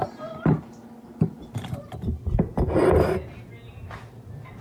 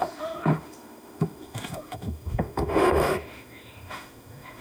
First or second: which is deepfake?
second